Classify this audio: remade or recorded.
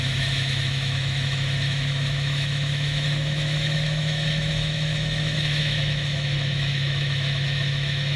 remade